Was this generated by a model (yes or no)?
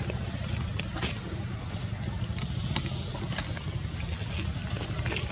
no